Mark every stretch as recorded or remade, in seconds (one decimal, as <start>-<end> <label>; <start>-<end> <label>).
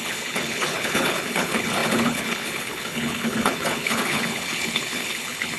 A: 0.0-5.6 remade